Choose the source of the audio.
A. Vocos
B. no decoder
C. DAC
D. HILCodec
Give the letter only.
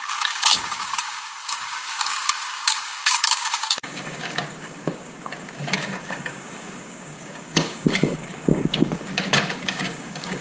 C